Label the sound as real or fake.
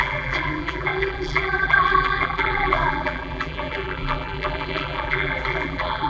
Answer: fake